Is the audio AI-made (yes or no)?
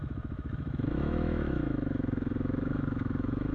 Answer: yes